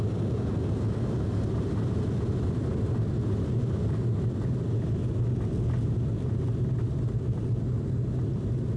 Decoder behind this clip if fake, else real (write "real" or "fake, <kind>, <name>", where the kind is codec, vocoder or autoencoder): real